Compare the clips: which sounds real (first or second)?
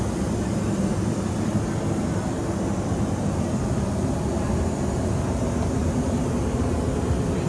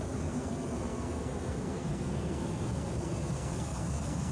first